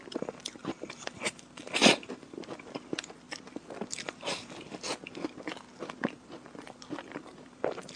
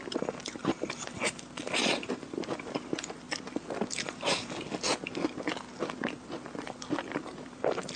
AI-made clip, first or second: first